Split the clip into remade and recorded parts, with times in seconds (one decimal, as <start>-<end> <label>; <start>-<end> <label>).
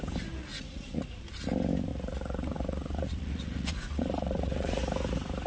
0.0-0.5 recorded; 0.5-1.2 remade; 1.2-1.9 recorded; 1.9-4.8 remade; 4.8-5.5 recorded